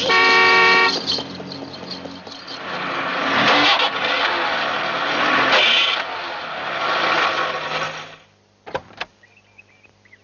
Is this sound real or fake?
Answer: real